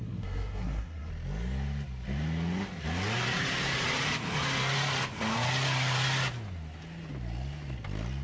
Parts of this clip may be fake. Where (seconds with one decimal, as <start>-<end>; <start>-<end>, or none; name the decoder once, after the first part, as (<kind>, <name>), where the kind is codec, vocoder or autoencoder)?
0.0-1.1 (codec, SNAC)